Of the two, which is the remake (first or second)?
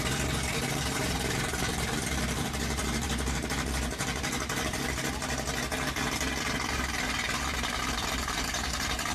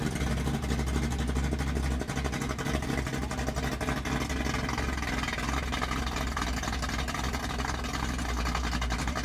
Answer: first